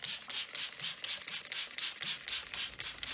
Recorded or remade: recorded